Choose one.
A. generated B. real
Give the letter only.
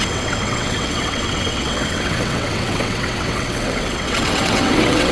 A